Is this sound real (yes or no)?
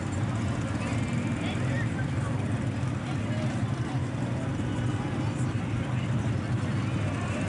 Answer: yes